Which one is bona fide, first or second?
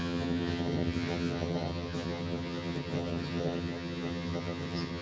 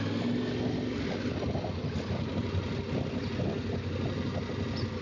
second